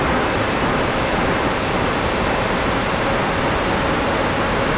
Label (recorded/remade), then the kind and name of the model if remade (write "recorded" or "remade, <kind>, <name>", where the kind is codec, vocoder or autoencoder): remade, vocoder, BigVGAN v2